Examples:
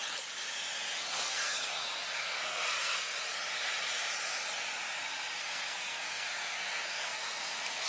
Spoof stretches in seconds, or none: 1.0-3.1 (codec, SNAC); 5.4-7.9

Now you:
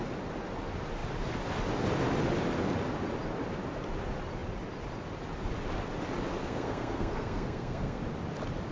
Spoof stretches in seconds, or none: 6.4-8.0 (codec, SNAC)

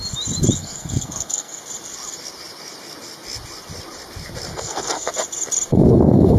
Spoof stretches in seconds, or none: 0.6-1.6 (codec, SNAC); 4.5-5.1; 5.7-6.4

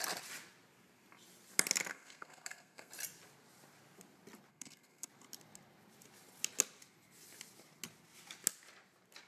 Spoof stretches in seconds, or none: 1.9-2.9 (codec, SNAC); 4.5-5.1

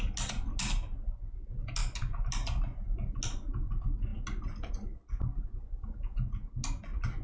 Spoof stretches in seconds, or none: none

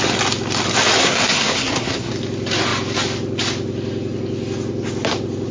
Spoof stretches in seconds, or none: 1.0-2.1 (codec, SNAC)

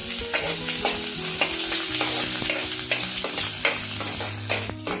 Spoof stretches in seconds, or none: none